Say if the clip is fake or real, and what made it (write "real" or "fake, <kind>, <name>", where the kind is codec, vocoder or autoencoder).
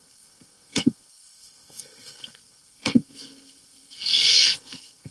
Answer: fake, codec, SNAC